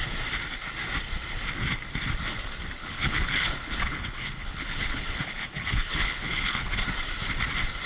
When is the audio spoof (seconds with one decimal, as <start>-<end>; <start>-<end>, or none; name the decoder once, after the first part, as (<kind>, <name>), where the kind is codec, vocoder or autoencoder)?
2.8-6.8 (codec, HILCodec)